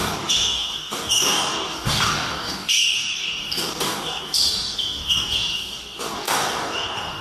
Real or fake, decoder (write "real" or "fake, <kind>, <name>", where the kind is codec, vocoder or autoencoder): fake, codec, DAC